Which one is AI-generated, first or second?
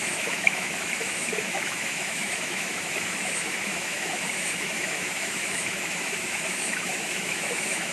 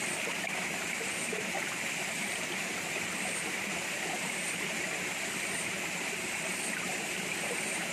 first